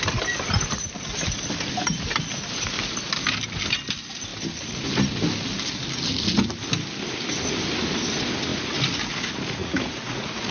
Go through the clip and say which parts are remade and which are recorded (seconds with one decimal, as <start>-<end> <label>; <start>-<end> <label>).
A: 0.0-9.6 recorded; 9.6-10.5 remade